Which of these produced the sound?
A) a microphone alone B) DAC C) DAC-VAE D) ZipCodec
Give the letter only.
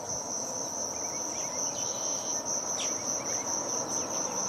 A